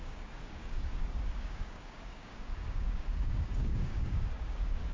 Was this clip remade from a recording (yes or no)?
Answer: yes